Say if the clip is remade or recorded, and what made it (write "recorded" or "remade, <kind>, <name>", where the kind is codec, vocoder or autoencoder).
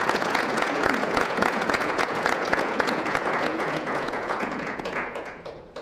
remade, vocoder, Vocos